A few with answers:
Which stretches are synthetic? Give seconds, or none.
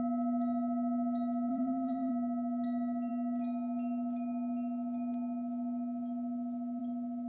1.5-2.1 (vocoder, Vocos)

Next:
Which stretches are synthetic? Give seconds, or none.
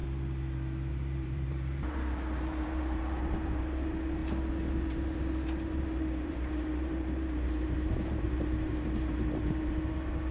0.9-4.2 (vocoder, BigVGAN v2); 4.8-10.3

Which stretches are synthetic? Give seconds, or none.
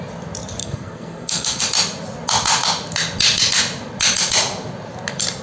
0.6-1.6 (codec, SNAC)